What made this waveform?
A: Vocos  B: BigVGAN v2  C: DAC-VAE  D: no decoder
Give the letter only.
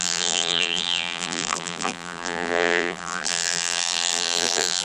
B